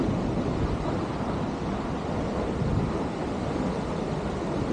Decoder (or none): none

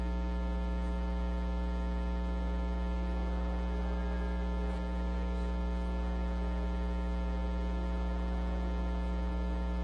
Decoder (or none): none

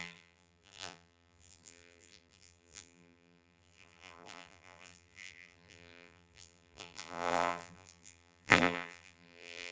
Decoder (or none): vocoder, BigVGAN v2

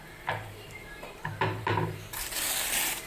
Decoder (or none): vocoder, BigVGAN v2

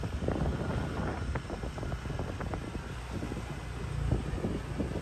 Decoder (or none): none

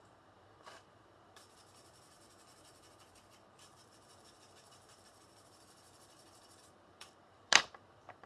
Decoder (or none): vocoder, BigVGAN v2